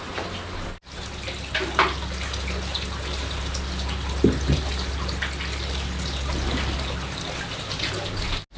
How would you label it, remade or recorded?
recorded